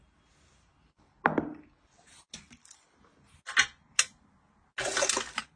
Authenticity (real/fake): real